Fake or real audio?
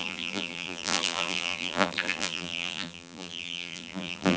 fake